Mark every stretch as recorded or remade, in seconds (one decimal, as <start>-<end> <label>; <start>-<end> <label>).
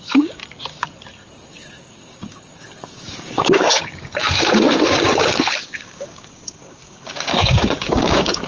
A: 0.0-0.4 remade; 0.4-1.5 recorded; 1.5-8.5 remade